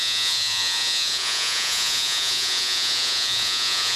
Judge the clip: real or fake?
fake